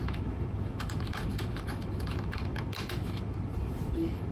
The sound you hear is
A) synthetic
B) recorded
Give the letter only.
A